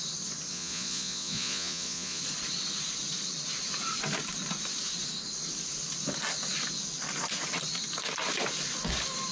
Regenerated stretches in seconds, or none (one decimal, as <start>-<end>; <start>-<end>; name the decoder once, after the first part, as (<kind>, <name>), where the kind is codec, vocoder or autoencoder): 0.5-2.2 (vocoder, Vocos)

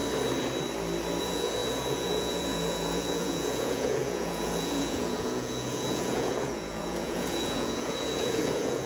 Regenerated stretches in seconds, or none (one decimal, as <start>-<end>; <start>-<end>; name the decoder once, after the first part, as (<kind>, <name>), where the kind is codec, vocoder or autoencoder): 1.2-8.9 (vocoder, Vocos)